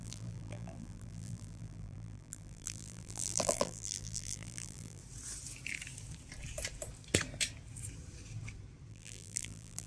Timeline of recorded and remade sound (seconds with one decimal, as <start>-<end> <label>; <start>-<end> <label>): 0.0-5.0 remade; 5.0-8.9 recorded; 8.9-9.9 remade